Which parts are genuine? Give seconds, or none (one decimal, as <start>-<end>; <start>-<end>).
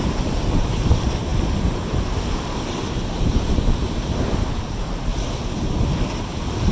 5.1-6.2